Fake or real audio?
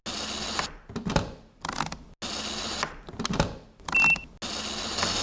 real